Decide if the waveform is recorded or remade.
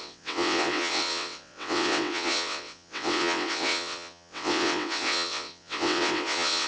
remade